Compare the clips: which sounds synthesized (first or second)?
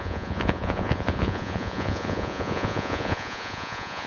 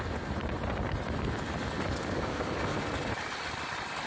first